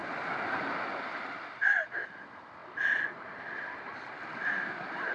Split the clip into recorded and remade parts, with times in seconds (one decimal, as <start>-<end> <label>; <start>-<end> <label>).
0.0-5.1 recorded